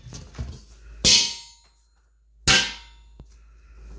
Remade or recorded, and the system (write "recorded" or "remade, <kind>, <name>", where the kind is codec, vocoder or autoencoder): recorded